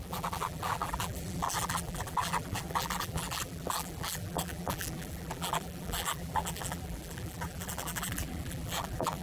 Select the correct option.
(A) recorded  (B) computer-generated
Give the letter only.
B